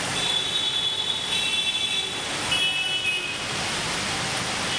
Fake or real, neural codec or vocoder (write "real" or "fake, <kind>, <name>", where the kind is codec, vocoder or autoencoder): real